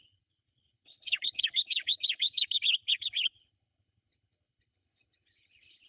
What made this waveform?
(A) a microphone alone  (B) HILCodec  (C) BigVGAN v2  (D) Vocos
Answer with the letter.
B